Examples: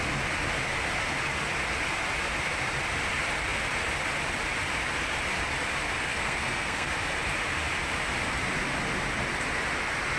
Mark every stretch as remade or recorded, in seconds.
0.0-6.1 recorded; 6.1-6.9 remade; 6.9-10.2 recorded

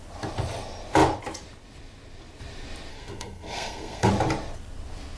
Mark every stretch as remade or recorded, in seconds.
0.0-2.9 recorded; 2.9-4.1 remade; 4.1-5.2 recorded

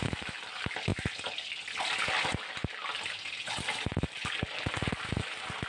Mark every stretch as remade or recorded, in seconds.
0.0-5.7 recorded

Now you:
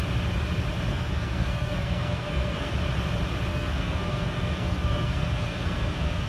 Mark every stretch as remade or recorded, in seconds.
0.0-0.9 recorded; 0.9-2.7 remade; 2.7-3.5 recorded; 3.5-6.3 remade